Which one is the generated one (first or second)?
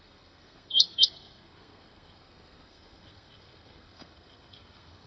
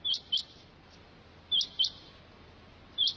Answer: first